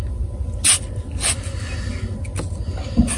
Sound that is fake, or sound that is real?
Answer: real